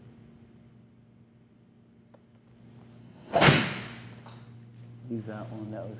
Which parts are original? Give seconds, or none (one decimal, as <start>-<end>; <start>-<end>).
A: 0.0-3.0; 3.6-6.0